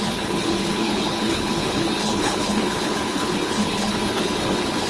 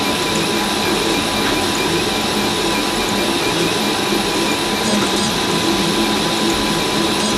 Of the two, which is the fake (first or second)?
first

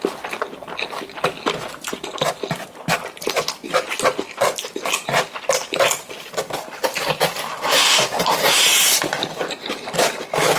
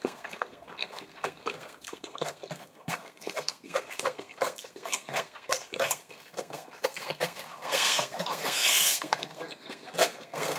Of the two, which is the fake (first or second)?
second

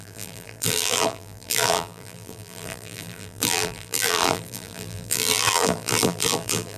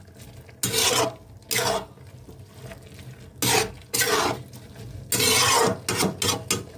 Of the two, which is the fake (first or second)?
first